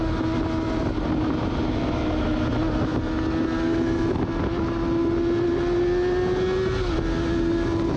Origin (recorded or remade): recorded